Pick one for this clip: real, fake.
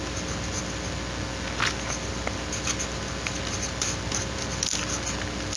real